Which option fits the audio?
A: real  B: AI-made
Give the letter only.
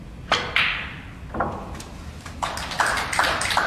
A